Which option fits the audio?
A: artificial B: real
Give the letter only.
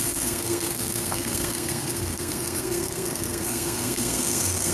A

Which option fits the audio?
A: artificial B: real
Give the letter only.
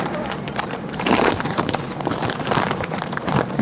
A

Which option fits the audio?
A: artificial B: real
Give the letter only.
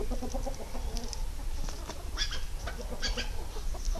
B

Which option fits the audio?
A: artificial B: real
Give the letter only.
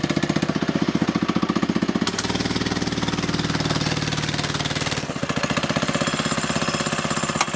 B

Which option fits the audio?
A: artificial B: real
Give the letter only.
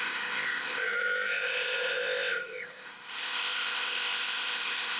A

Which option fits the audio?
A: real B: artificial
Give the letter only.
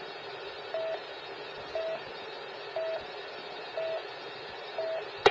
A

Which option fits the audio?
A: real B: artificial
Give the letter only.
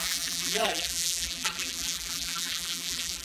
B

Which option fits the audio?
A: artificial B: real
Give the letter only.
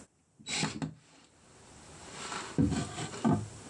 B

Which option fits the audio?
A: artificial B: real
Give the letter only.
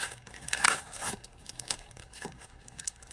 A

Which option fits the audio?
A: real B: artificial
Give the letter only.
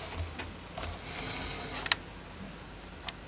A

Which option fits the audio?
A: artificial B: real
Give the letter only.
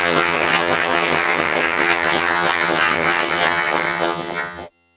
A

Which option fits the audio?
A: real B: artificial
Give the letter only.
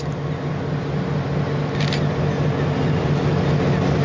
A